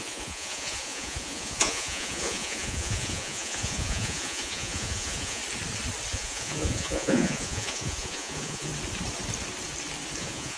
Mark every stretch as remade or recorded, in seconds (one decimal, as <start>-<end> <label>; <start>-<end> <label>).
0.0-5.4 remade; 5.4-6.1 recorded; 6.1-8.7 remade; 8.7-10.2 recorded; 10.2-10.6 remade